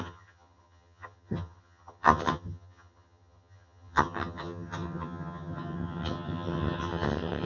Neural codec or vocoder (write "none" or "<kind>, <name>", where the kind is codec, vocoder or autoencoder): vocoder, HiFi-GAN